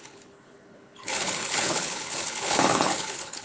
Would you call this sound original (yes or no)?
no